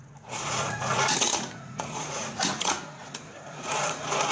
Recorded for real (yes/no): no